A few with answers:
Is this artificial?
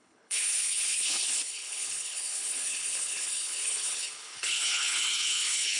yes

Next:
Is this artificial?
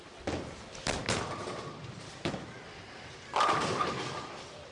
no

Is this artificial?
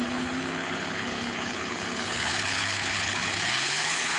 yes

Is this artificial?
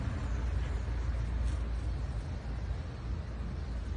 no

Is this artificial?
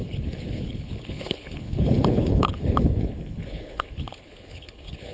yes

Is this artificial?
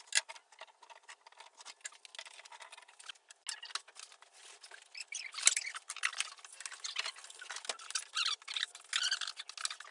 no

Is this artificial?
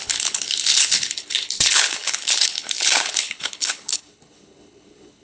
yes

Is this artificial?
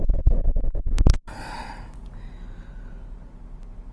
no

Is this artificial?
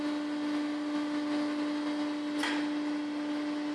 no